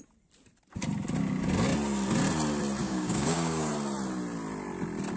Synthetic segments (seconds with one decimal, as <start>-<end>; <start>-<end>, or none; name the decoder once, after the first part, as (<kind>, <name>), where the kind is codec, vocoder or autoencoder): 2.8-3.7 (codec, DAC)